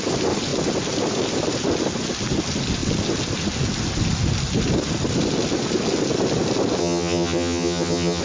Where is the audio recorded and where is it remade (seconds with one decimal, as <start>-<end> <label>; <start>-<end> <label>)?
0.0-6.8 recorded; 6.8-8.2 remade